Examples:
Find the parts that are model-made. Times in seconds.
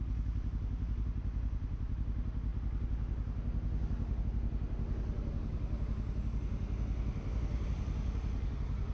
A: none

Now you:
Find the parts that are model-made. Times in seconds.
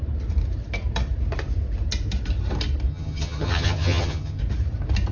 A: 2.9-4.4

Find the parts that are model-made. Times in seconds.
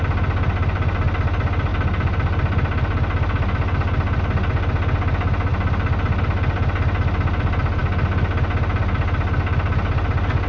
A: none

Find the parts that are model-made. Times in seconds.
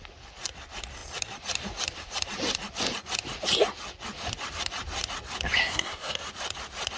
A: 5.6-6.3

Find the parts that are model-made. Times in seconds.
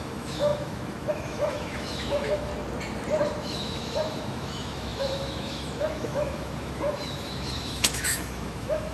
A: 0.0-2.5; 3.4-8.9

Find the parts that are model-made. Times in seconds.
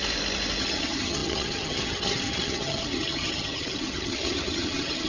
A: 0.6-5.1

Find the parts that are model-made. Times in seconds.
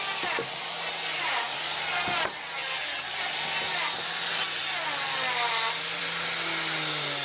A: none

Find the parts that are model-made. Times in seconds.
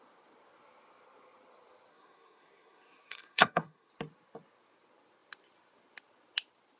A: 1.9-3.9